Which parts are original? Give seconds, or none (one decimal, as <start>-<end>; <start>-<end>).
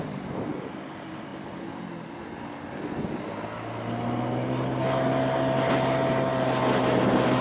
0.0-7.4